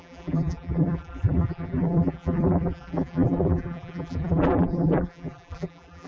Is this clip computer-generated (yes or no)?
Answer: yes